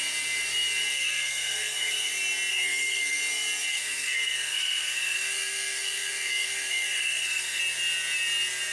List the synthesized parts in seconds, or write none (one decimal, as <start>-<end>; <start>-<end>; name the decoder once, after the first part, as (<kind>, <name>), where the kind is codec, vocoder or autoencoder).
0.9-2.1 (codec, SNAC); 2.5-3.2; 3.7-7.6